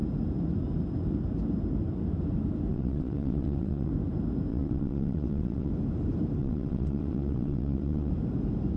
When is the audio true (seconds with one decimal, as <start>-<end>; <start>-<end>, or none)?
0.0-2.7; 3.9-4.5; 5.7-6.4; 8.1-8.8